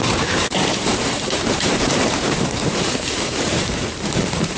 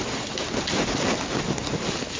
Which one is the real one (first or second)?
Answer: second